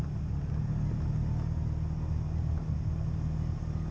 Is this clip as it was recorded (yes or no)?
yes